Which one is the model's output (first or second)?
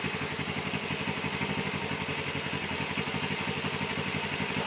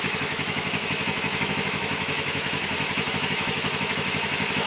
second